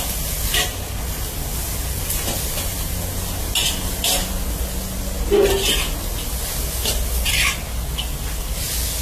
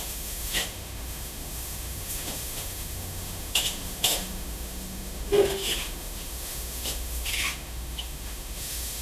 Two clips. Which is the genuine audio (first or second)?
first